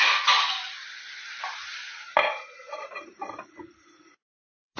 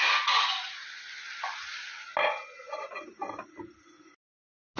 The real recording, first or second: second